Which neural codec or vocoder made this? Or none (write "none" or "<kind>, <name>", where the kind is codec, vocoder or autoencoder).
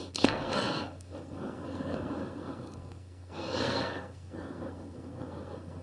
codec, SNAC